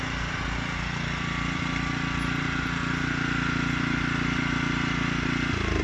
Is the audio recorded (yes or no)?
yes